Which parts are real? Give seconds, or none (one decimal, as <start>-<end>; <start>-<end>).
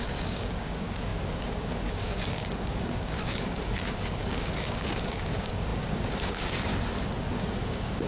6.7-7.2